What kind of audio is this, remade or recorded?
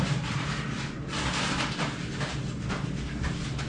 recorded